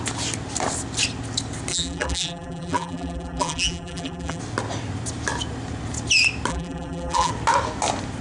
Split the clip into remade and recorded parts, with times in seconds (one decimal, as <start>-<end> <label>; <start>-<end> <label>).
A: 0.0-1.7 recorded; 1.7-4.4 remade; 4.4-6.5 recorded; 6.5-7.3 remade; 7.3-8.2 recorded